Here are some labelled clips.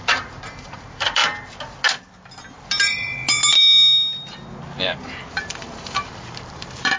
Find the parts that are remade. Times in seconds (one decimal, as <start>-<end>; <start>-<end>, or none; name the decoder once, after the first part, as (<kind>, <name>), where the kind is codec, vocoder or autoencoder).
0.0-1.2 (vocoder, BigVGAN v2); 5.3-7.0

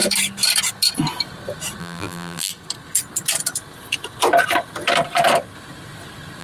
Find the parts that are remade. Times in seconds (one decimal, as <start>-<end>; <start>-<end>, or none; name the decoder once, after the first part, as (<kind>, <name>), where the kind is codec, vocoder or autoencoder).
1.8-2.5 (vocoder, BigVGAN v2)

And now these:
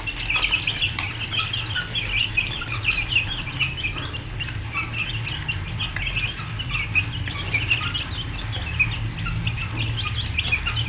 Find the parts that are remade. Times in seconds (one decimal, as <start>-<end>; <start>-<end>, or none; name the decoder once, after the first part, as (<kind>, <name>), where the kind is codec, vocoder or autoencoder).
2.2-3.4 (vocoder, BigVGAN v2)

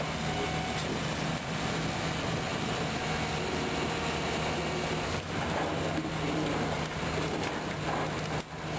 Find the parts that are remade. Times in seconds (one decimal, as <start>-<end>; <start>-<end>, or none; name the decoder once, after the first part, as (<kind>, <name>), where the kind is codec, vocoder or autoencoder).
2.5-7.0 (vocoder, BigVGAN v2)